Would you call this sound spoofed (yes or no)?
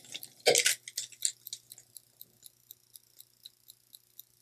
no